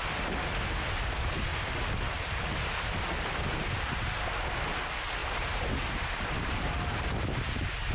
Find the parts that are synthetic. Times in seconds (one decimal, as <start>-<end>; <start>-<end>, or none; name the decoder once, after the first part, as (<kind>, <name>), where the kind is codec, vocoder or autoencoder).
5.2-7.9 (vocoder, BigVGAN v2)